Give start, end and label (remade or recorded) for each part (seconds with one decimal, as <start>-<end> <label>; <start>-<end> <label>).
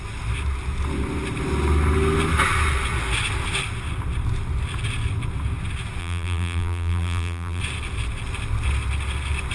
0.0-6.0 recorded; 6.0-7.6 remade; 7.6-9.5 recorded